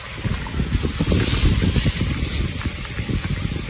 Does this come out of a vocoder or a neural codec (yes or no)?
no